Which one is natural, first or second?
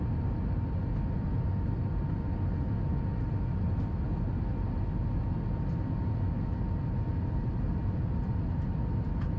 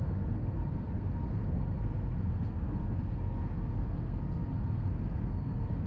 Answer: first